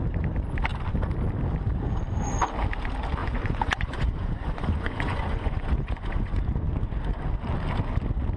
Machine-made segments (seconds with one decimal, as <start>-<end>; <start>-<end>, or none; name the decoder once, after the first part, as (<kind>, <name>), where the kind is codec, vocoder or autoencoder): 3.2-6.8 (vocoder, Vocos)